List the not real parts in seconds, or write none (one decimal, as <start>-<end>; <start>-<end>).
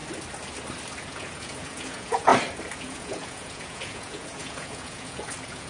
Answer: 1.0-2.3; 2.8-5.7